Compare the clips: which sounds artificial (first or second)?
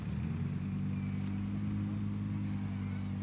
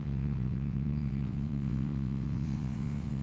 second